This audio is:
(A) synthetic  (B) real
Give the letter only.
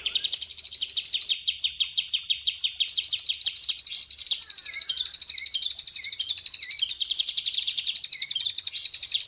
B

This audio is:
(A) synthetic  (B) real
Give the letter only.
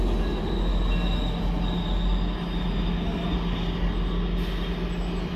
B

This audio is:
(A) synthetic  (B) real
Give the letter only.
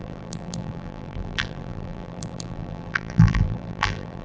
A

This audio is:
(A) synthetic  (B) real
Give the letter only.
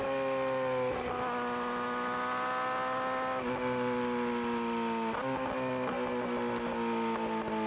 B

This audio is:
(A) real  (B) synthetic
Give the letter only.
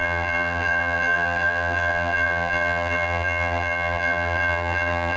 B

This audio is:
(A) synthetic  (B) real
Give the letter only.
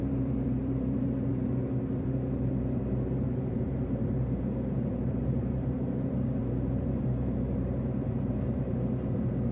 A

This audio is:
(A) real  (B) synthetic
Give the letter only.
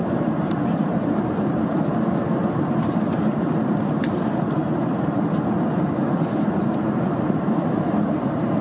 B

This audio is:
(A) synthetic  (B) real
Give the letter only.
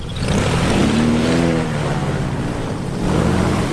A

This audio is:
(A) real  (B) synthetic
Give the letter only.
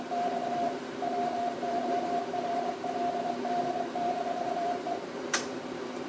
B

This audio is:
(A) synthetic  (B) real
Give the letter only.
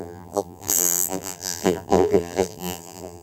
A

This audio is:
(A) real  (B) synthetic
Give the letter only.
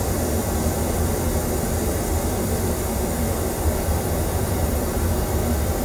B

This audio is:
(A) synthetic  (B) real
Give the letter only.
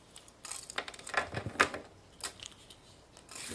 B